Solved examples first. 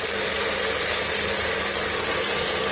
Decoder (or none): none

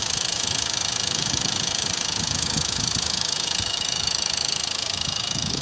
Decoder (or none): codec, DAC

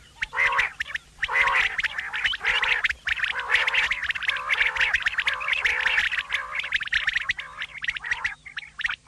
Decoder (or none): none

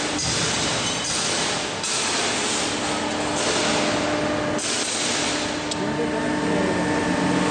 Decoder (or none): none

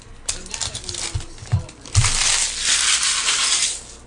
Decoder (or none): none